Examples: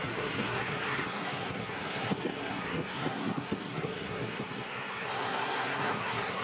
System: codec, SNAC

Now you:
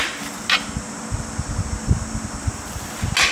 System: none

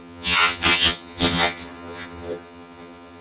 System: vocoder, HiFi-GAN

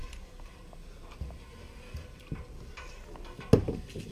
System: none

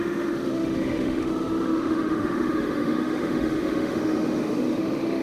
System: autoencoder, DAC-VAE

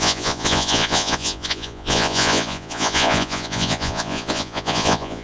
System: vocoder, Vocos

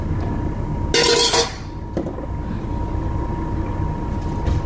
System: none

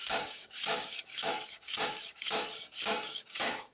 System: codec, DAC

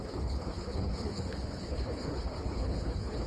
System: codec, HILCodec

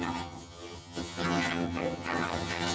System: vocoder, HiFi-GAN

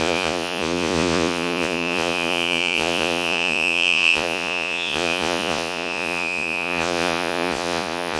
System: vocoder, Vocos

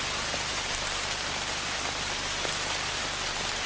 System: none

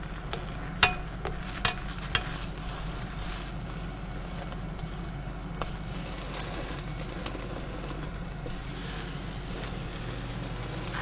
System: none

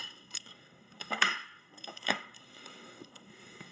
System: codec, SNAC